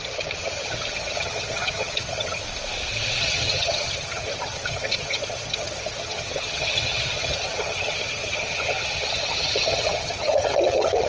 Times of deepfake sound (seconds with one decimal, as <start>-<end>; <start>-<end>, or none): 0.0-2.4; 3.2-11.1